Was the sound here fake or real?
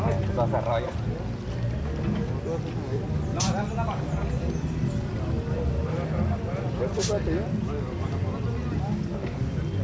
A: real